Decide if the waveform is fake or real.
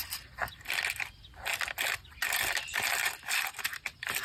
real